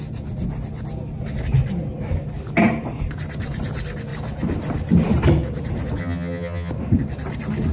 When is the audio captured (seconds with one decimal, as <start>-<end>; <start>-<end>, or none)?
0.0-6.0; 6.7-7.7